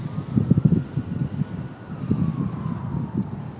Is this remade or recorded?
recorded